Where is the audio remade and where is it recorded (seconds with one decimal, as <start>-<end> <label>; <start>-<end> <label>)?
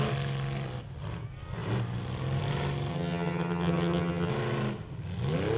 0.0-2.9 recorded; 2.9-4.3 remade; 4.3-5.6 recorded